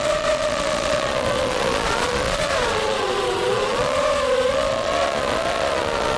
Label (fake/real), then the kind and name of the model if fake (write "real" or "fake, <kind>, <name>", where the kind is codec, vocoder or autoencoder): fake, vocoder, Vocos